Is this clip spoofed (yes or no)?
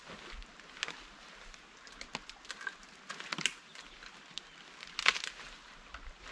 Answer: no